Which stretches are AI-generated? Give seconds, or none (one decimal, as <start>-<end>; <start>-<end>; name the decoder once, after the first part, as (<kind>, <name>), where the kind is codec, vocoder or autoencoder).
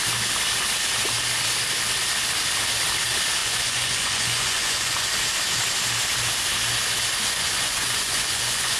3.4-5.1 (vocoder, Vocos); 7.1-8.8